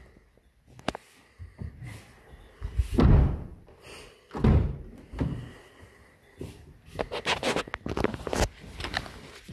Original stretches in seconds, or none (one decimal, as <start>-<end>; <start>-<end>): 0.0-9.5